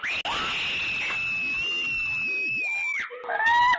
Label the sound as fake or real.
real